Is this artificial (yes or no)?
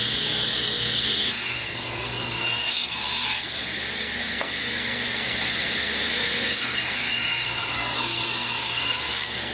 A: yes